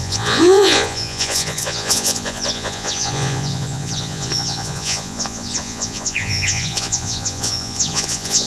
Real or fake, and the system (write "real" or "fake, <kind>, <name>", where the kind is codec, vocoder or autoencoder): fake, vocoder, Vocos